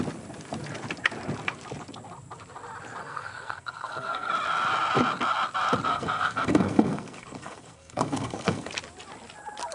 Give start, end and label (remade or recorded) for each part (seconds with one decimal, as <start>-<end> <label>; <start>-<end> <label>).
0.0-3.0 recorded; 3.0-4.3 remade; 4.3-5.9 recorded; 5.9-8.7 remade; 8.7-9.7 recorded

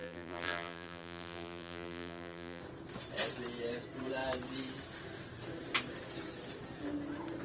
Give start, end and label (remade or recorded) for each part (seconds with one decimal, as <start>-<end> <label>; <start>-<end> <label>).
0.0-2.6 remade; 2.6-7.4 recorded

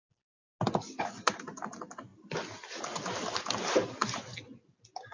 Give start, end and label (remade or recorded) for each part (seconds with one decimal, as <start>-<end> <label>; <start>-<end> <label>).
0.0-5.1 recorded

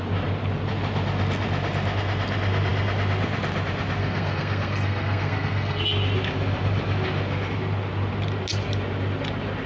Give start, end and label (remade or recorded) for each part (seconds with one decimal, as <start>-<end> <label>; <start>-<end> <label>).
0.0-4.0 recorded; 4.0-5.8 remade; 5.8-9.7 recorded

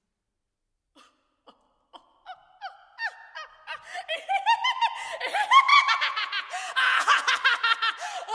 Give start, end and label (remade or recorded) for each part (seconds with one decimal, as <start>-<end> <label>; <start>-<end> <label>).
0.0-5.7 recorded; 5.7-7.3 remade; 7.3-8.3 recorded